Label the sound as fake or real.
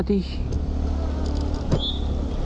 real